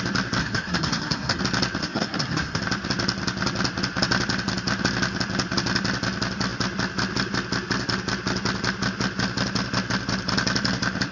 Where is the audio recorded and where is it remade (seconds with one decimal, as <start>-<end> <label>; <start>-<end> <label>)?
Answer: 0.0-0.4 recorded; 0.4-1.4 remade; 1.4-1.8 recorded; 1.8-2.6 remade; 2.6-11.1 recorded